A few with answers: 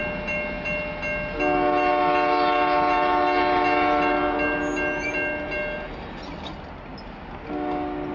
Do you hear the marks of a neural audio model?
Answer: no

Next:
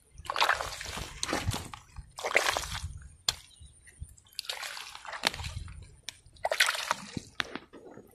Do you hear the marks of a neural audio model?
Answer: no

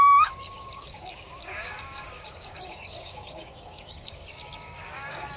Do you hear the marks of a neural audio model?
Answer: yes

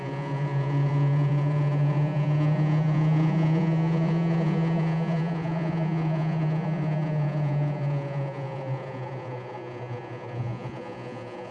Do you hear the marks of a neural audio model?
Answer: yes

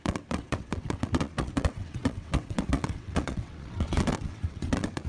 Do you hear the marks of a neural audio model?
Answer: yes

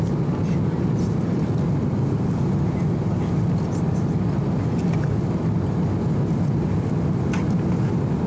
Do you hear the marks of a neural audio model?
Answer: no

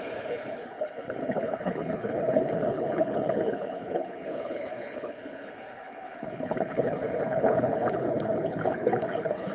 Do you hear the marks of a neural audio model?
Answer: yes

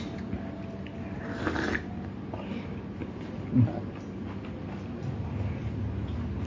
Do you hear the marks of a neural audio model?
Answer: no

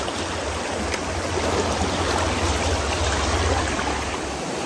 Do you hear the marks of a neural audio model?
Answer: no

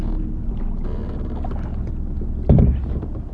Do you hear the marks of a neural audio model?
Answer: no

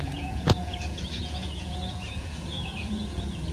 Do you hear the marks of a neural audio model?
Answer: yes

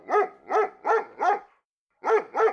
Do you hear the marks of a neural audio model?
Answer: no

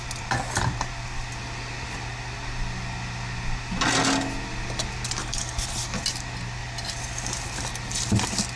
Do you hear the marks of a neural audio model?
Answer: no